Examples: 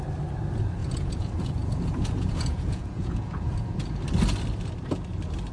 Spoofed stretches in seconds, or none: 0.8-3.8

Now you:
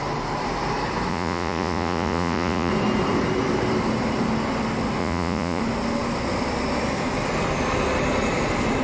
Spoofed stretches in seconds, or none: 1.1-2.7; 5.0-5.6

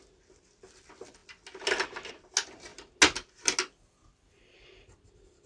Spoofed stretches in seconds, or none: none

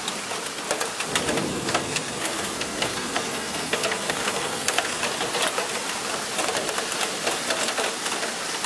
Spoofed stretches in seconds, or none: 1.5-5.0

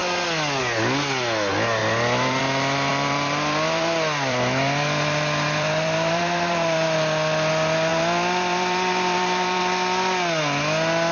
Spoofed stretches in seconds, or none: 1.8-2.4; 2.9-7.5; 7.9-9.6